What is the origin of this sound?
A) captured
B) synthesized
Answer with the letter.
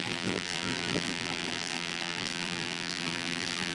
B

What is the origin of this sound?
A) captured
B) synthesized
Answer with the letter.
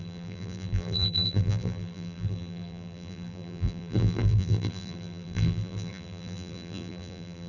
B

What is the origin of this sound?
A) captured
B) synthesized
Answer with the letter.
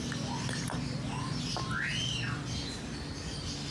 A